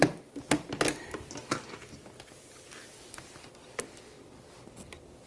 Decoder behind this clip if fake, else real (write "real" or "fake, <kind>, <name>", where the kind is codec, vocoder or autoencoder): real